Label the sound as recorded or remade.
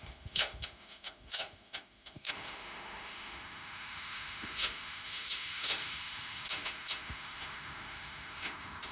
remade